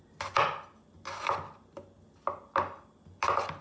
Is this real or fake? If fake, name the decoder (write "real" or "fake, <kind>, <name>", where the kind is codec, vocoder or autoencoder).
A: real